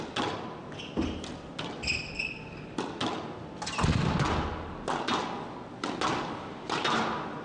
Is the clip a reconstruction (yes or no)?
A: no